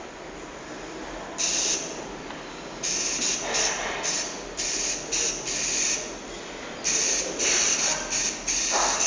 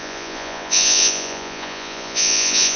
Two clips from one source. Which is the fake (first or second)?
second